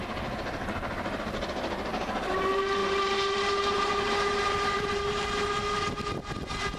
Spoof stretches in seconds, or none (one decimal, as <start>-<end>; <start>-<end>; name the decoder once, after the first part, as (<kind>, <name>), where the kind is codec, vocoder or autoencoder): 1.9-2.4 (vocoder, BigVGAN v2); 2.8-5.1